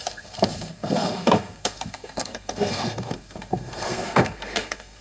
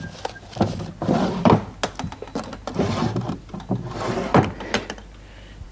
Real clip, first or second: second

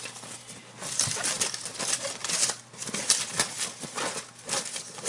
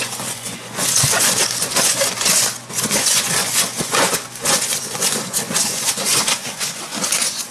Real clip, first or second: first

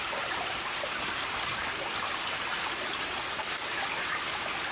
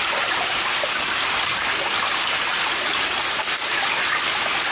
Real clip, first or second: second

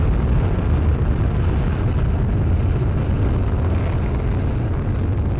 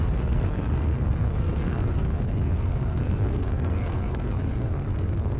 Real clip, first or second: first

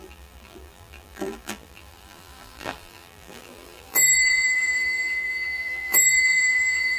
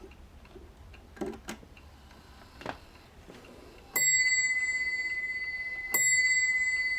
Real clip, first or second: second